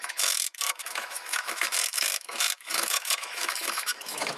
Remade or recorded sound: remade